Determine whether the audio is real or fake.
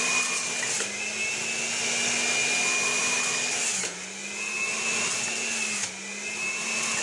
real